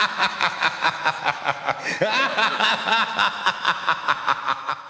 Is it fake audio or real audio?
fake